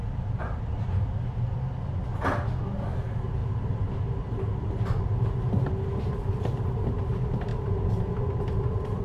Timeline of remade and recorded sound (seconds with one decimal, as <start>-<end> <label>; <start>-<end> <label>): 0.0-9.0 recorded